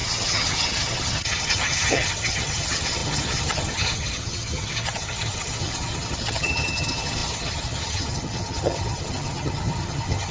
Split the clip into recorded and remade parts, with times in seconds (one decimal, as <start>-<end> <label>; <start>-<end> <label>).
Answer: 0.0-10.3 remade